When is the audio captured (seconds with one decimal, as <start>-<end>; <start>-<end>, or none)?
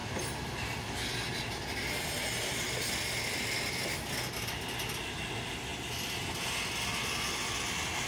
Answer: 1.4-8.1